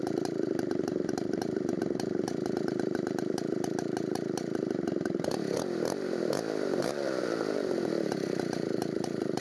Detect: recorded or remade remade